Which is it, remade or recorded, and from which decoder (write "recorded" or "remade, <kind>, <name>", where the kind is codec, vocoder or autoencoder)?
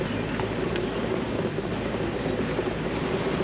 recorded